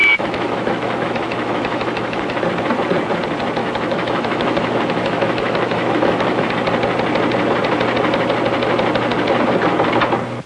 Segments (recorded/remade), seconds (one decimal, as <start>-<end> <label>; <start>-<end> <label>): 0.0-2.4 remade; 2.4-3.6 recorded; 3.6-6.5 remade; 6.5-10.5 recorded